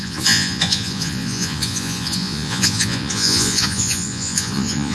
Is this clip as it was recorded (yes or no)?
no